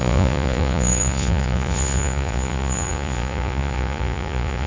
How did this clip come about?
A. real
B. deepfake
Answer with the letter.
B